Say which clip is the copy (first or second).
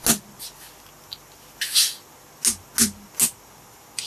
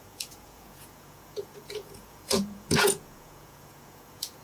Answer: second